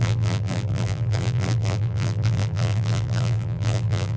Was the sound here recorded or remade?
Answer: remade